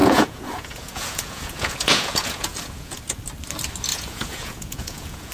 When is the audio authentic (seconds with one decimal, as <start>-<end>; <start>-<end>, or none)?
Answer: 3.2-3.9